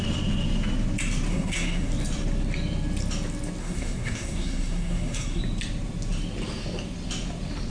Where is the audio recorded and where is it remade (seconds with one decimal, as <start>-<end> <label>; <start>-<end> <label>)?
0.0-1.3 recorded; 1.3-1.9 remade; 1.9-3.6 recorded; 3.6-5.4 remade; 5.4-7.7 recorded